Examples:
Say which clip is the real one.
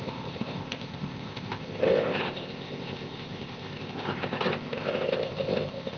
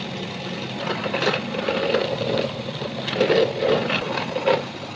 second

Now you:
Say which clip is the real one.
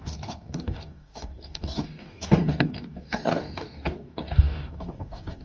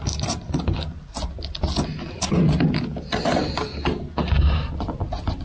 second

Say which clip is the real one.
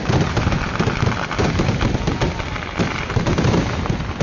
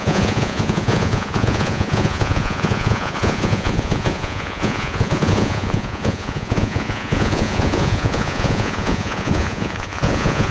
first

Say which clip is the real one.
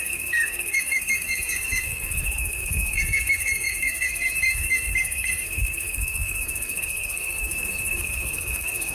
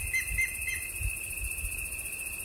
second